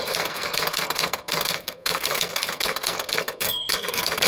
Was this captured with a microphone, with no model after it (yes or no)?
no